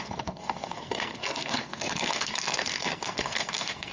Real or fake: fake